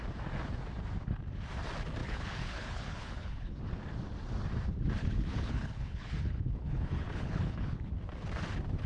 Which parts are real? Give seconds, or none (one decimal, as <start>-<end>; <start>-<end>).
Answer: 0.0-2.0; 3.6-5.0; 7.9-8.9